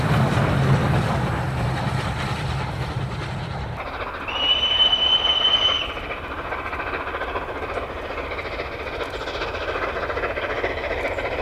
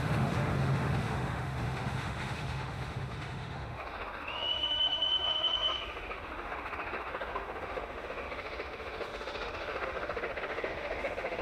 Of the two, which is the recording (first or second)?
first